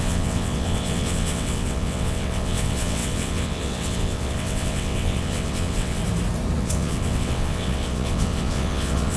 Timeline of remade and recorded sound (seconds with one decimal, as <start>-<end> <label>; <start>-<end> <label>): 0.0-6.0 remade; 6.0-6.6 recorded; 6.6-9.2 remade

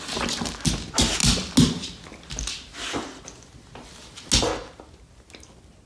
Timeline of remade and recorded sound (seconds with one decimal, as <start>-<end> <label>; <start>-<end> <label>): 0.0-5.9 recorded

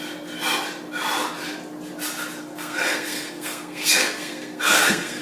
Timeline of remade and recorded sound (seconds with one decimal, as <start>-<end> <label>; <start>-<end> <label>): 0.0-2.4 recorded; 2.4-5.2 remade

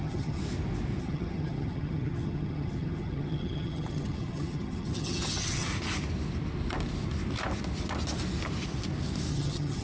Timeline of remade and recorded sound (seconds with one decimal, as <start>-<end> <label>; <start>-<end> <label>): 0.0-0.4 remade; 0.4-1.0 recorded; 1.0-5.7 remade; 5.7-9.3 recorded; 9.3-9.8 remade